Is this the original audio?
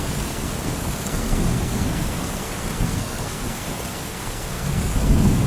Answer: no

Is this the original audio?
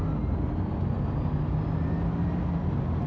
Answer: yes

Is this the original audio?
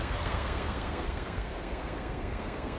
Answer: no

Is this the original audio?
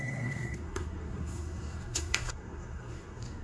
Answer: no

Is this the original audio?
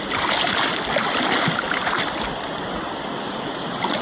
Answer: yes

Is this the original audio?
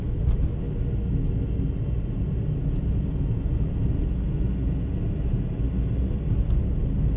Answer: yes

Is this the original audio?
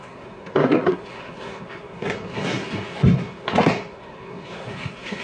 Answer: no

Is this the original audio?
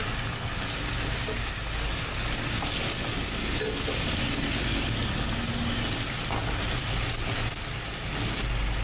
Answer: yes